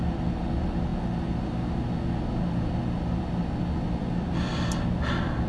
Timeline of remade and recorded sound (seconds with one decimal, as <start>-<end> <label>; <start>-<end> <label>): 0.0-5.5 recorded